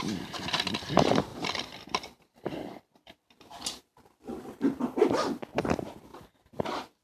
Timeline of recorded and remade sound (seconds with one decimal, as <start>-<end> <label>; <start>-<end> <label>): 0.0-1.3 recorded; 1.3-3.2 remade; 3.2-6.1 recorded; 6.1-7.0 remade